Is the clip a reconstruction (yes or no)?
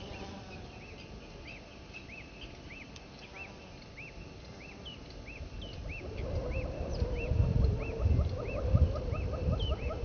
no